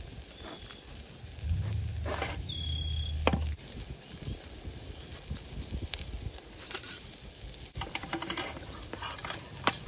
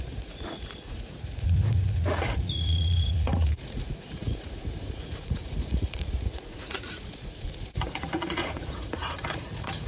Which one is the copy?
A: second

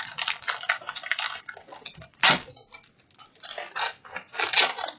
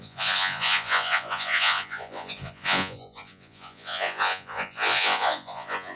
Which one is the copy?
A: second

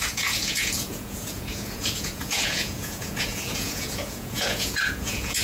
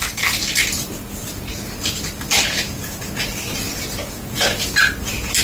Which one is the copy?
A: first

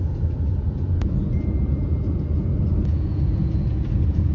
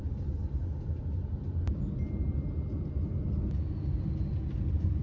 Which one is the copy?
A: first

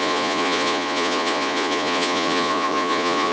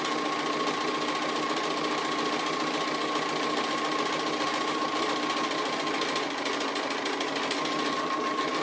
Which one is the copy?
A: first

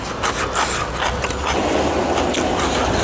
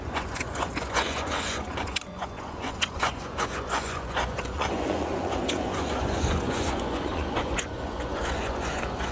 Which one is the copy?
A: second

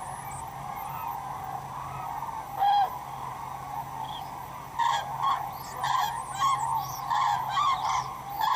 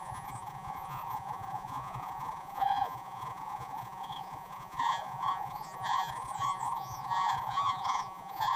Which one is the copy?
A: second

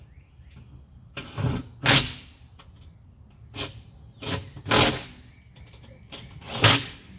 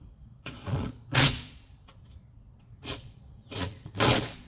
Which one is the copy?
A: second